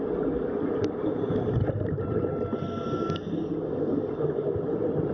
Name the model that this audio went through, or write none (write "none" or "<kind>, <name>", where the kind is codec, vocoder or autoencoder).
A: none